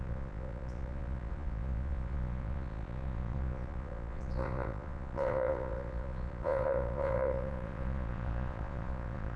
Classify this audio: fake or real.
fake